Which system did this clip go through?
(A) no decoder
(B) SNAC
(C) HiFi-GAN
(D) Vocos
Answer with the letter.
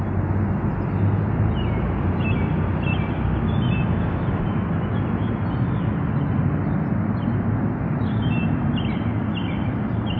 A